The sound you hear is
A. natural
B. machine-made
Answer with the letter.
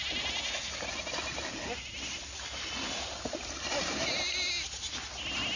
A